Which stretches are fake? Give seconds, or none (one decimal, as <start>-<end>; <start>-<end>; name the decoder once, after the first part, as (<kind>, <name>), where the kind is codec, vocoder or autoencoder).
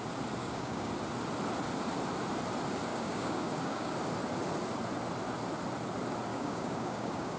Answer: 0.4-0.9 (codec, DAC); 2.9-3.9; 6.3-7.4